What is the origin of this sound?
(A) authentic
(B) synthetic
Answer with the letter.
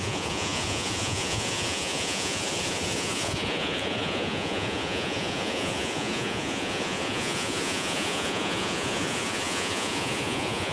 B